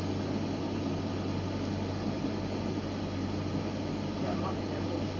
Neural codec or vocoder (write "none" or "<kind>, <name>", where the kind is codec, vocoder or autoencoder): none